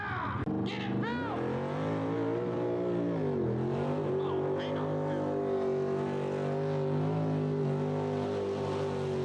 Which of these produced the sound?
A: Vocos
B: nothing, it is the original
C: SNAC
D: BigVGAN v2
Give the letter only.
B